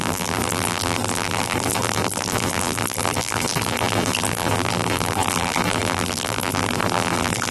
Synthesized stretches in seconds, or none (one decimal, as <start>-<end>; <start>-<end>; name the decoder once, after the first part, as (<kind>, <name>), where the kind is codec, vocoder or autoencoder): 0.0-7.5 (vocoder, BigVGAN v2)